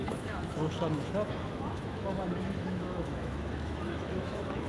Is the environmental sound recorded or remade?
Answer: remade